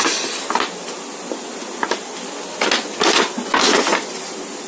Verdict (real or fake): real